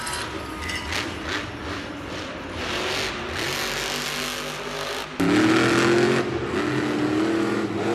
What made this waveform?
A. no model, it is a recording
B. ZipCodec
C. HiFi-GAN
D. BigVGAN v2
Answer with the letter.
A